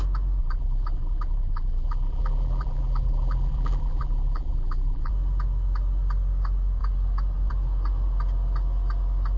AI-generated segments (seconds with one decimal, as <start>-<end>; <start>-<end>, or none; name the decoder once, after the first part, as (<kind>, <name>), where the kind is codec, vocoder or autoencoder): 0.4-5.1 (vocoder, BigVGAN v2)